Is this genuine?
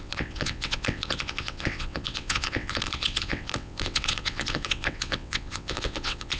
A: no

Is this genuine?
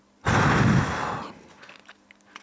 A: yes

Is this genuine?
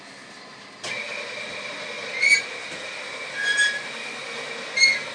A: yes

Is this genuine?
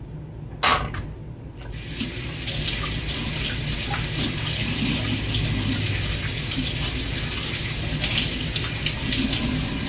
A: yes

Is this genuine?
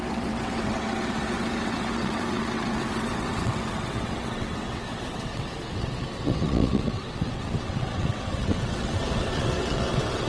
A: no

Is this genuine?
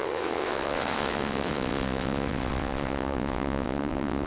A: no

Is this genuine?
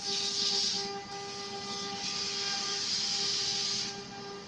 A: yes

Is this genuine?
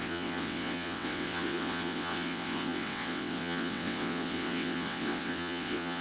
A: no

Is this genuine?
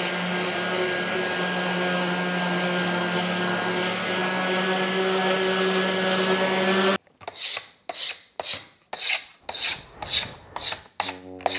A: yes